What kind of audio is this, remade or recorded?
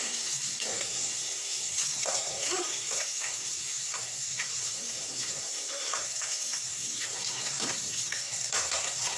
remade